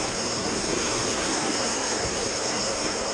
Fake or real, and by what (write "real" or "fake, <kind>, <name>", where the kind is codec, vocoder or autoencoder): fake, codec, SNAC